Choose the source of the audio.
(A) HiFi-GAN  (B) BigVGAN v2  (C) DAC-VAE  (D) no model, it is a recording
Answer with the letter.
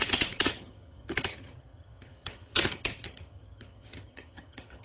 A